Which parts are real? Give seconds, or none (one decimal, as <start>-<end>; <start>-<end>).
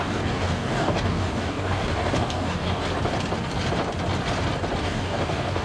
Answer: 2.8-4.8